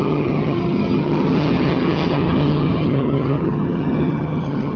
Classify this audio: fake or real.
fake